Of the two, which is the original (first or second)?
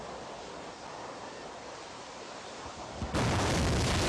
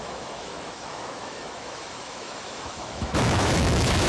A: first